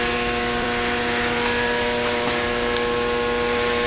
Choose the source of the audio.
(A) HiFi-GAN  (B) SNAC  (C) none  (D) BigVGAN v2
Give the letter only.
D